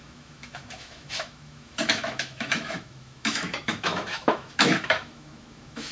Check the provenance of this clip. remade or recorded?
remade